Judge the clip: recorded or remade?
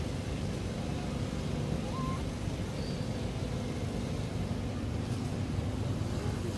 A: recorded